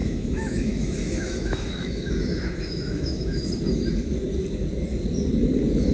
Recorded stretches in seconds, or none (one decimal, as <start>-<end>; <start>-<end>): 3.5-5.9